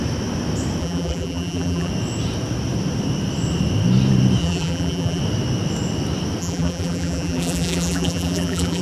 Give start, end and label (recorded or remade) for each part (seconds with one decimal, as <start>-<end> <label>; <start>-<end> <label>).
0.0-0.8 recorded; 0.8-1.9 remade; 1.9-4.4 recorded; 4.4-5.2 remade; 5.2-6.4 recorded; 6.4-8.8 remade